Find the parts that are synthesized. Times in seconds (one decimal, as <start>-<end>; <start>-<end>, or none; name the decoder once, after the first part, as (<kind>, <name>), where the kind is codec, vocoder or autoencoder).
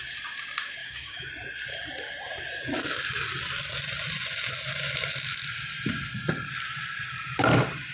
0.8-1.3 (autoencoder, DAC-VAE)